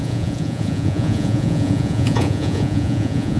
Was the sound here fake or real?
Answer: fake